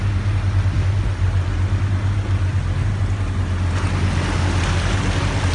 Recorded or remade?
recorded